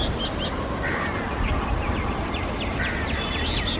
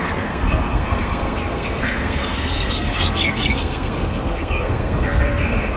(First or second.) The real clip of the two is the first